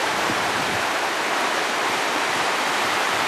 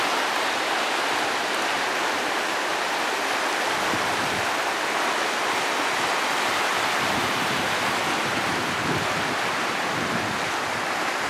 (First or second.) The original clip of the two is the second